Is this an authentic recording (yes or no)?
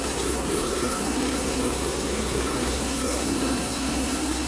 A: no